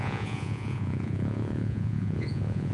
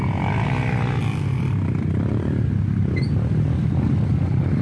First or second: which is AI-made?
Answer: first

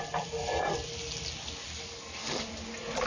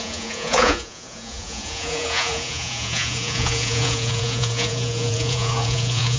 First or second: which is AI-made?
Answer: second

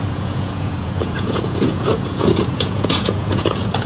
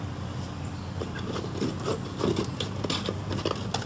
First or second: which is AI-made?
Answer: first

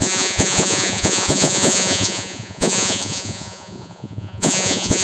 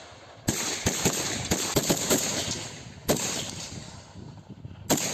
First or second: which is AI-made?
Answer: first